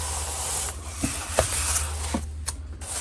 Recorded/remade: recorded